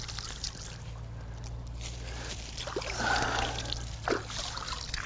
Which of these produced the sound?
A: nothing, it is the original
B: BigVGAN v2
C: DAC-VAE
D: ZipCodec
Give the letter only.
A